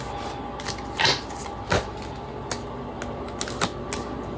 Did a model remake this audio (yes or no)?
no